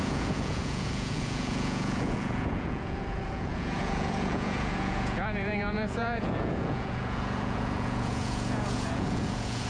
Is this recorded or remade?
remade